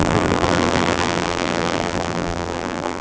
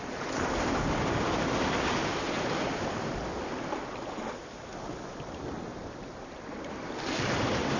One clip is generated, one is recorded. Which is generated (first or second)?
first